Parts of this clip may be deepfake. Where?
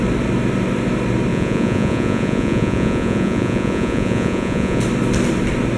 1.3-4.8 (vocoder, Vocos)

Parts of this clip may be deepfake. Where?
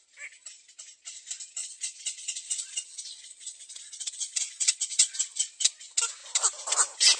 1.6-5.2 (vocoder, Vocos)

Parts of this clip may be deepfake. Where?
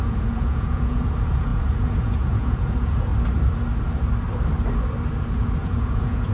0.0-3.1 (vocoder, Vocos); 5.2-6.3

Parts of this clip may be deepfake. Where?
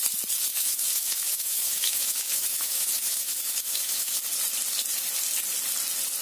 0.5-4.2 (autoencoder, DAC-VAE)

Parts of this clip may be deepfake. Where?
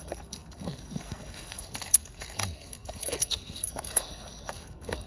0.0-5.1 (codec, SNAC)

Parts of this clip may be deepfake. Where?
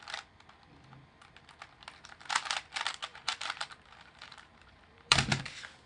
3.1-5.4 (vocoder, BigVGAN v2)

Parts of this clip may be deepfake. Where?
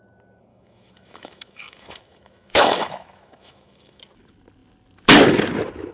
0.5-4.0 (autoencoder, DAC-VAE)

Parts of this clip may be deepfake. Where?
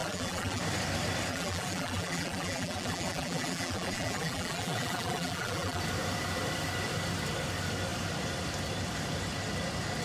0.0-0.6 (vocoder, BigVGAN v2); 1.3-5.8